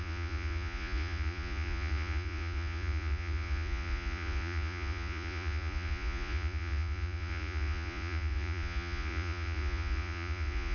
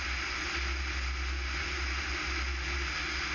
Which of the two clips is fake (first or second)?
first